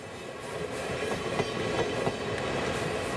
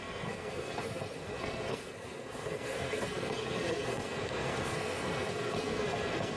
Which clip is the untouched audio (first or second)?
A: first